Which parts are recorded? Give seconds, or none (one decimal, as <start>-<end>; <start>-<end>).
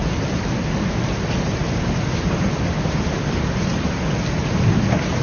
0.0-5.2